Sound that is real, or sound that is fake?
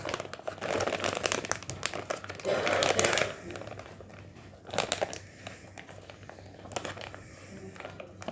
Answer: real